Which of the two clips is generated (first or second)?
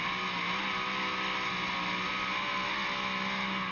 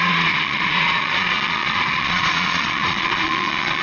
second